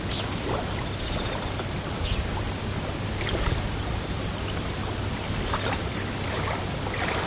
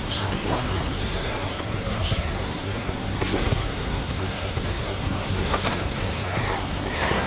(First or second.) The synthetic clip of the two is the second